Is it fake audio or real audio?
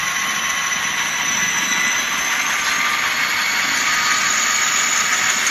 real